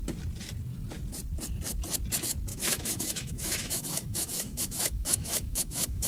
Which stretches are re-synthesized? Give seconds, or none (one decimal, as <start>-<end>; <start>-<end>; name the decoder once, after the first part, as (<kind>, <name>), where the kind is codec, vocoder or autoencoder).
2.5-6.1 (autoencoder, DAC-VAE)